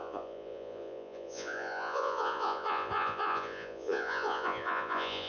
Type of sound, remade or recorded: remade